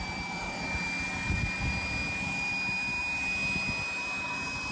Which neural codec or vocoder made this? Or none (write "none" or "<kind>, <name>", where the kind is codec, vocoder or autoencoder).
none